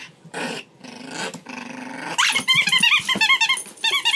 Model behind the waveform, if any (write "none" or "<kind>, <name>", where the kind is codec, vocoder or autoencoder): none